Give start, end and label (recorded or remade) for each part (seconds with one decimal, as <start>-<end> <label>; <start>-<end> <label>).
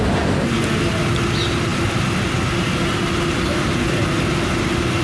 0.0-5.0 recorded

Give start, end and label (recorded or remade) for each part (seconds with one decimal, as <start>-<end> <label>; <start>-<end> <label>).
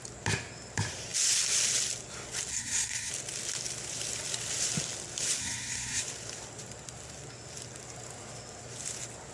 0.0-2.5 recorded; 2.5-3.1 remade; 3.1-5.4 recorded; 5.4-6.0 remade; 6.0-9.3 recorded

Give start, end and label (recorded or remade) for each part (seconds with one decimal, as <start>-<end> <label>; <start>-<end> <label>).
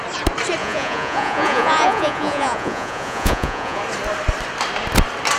0.0-0.6 recorded; 0.6-3.8 remade; 3.8-5.4 recorded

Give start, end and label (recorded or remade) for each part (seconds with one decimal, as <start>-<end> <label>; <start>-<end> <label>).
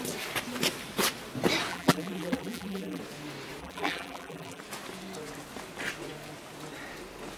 0.0-1.7 recorded; 1.7-3.0 remade; 3.0-3.6 recorded; 3.6-4.6 remade; 4.6-7.4 recorded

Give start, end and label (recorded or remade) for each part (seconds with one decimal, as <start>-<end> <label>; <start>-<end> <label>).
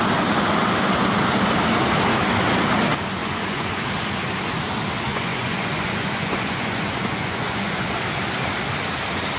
0.0-3.2 recorded; 3.2-3.8 remade; 3.8-5.1 recorded; 5.1-7.9 remade; 7.9-9.4 recorded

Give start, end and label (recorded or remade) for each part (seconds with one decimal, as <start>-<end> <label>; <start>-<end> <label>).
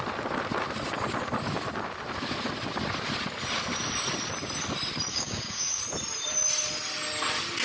0.0-5.1 recorded; 5.1-5.8 remade; 5.8-7.6 recorded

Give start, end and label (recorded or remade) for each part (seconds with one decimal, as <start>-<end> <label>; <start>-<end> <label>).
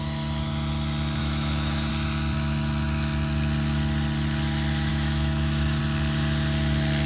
0.0-1.2 recorded; 1.2-1.9 remade; 1.9-4.9 recorded; 4.9-5.8 remade; 5.8-7.1 recorded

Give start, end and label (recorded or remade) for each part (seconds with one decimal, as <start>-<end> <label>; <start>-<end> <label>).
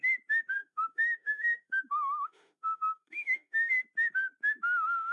0.0-0.6 recorded; 0.6-3.7 remade; 3.7-5.1 recorded